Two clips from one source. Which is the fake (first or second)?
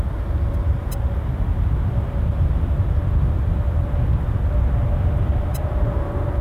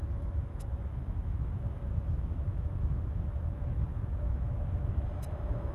second